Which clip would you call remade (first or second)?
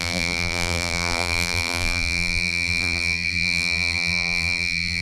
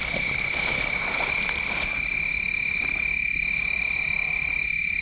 first